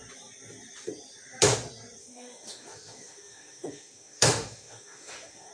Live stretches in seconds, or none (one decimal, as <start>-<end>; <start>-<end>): 0.0-2.0